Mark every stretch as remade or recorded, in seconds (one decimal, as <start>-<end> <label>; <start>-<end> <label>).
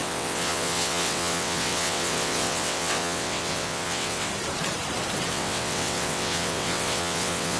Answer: 0.0-4.3 remade; 4.3-5.3 recorded; 5.3-7.6 remade